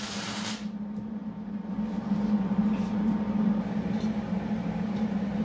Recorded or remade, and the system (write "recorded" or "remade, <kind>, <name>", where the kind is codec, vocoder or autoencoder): remade, vocoder, BigVGAN v2